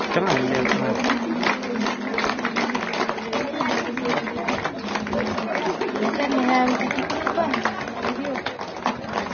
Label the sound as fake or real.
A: real